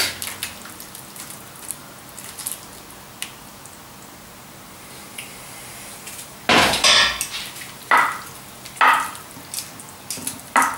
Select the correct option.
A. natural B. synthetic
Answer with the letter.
A